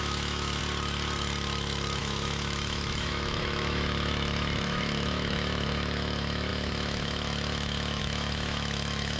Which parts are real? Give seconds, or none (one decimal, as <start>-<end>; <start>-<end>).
0.6-2.0